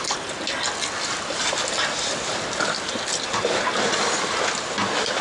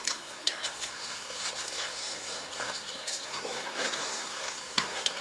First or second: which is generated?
second